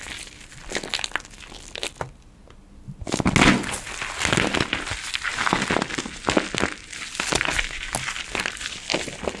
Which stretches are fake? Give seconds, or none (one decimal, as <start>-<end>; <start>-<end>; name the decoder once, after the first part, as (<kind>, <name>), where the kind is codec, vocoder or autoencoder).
none